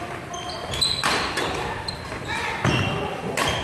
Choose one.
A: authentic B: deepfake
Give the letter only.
A